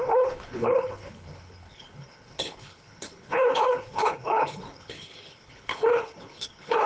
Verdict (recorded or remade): remade